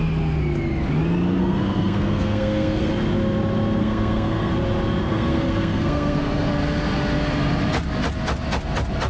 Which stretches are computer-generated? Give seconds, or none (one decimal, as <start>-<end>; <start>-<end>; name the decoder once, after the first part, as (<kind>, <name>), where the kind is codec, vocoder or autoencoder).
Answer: 1.4-2.9 (codec, SNAC); 3.8-4.5; 5.0-6.5